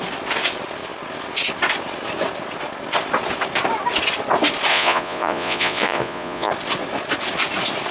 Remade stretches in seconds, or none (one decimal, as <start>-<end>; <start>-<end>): 4.7-6.5